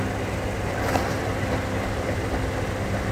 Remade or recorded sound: recorded